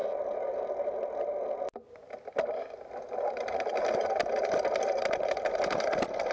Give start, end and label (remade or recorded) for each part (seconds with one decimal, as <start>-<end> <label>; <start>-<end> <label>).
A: 0.0-6.3 recorded